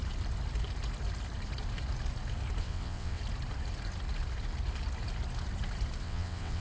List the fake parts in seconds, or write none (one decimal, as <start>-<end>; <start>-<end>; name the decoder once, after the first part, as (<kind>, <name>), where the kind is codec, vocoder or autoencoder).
2.6-3.2 (vocoder, WaveNeXt); 6.0-6.6